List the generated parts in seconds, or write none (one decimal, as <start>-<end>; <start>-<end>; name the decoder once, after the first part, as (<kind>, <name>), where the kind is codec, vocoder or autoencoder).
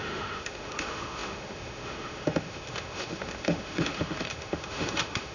0.0-5.3 (autoencoder, DAC-VAE)